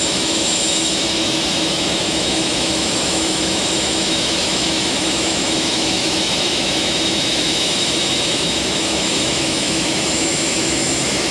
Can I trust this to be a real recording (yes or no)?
no